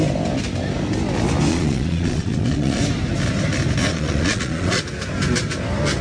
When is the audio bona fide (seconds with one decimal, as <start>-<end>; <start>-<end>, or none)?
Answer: 0.0-1.5; 2.8-3.9; 4.8-6.0